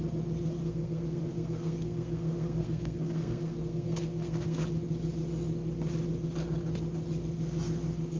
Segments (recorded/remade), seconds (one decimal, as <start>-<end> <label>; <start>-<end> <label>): 0.0-0.6 recorded; 0.6-4.6 remade; 4.6-8.2 recorded